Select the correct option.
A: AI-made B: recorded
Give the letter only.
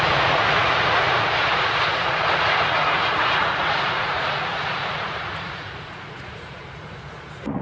A